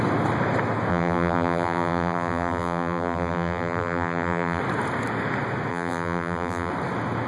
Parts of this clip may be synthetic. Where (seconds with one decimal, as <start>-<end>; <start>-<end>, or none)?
0.9-4.6; 5.7-6.7